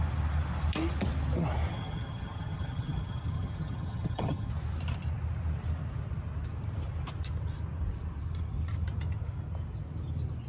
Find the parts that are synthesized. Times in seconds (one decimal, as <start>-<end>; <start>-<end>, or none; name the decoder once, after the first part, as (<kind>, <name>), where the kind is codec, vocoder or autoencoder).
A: 1.7-4.5 (vocoder, HiFi-GAN)